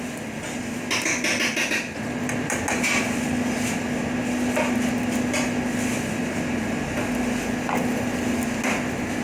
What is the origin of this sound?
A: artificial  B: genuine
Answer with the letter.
B